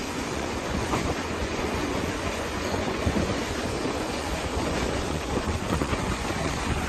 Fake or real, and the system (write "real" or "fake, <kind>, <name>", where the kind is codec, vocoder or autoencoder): fake, vocoder, Vocos